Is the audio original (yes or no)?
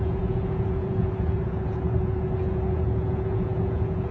no